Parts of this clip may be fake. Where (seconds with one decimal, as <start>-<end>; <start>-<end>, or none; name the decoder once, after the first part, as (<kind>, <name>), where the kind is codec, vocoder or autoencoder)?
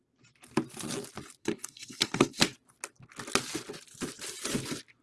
1.4-2.4 (codec, SNAC)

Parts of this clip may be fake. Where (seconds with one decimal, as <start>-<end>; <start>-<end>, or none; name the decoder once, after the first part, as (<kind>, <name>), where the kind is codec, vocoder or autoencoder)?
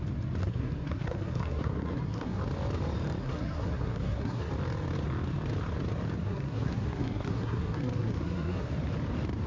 0.4-2.4 (codec, SNAC); 3.2-4.5; 6.2-8.7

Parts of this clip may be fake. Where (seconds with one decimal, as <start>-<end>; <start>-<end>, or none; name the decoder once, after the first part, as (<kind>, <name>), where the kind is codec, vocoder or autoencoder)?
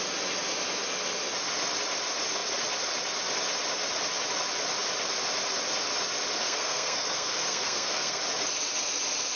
6.4-8.2 (codec, SNAC)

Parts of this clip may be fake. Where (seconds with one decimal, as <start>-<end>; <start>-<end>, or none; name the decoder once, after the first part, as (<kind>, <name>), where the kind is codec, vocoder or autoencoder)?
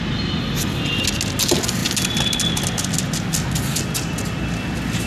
none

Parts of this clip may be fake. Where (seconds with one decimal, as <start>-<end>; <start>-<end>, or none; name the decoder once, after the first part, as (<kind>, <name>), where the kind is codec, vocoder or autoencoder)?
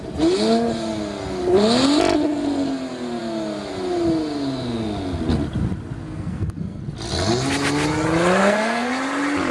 6.0-6.8 (codec, SNAC); 8.4-8.9